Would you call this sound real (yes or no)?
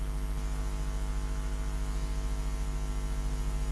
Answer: yes